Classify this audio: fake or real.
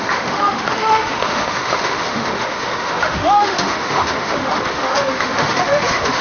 fake